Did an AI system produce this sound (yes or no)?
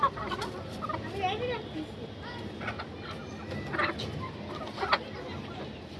no